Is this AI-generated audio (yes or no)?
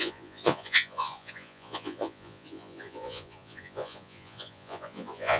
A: yes